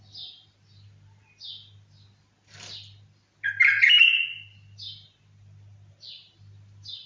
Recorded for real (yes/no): yes